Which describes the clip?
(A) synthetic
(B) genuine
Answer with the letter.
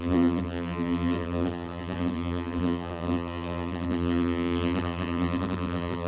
A